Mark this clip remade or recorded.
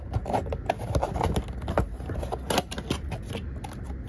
recorded